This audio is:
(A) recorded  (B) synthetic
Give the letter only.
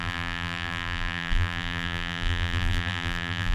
B